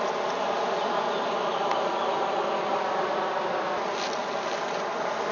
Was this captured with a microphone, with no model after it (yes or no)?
yes